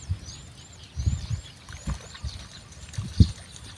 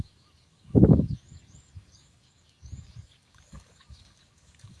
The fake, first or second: second